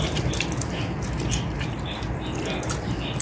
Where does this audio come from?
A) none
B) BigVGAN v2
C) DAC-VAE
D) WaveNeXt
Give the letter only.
A